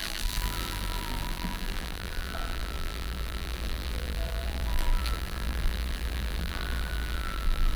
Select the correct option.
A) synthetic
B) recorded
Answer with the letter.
A